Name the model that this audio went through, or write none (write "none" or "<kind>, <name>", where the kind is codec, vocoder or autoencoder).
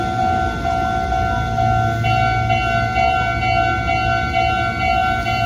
none